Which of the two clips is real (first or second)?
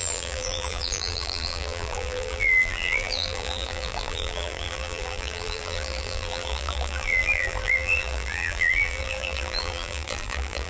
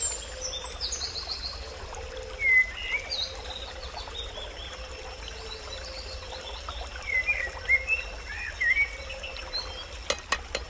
second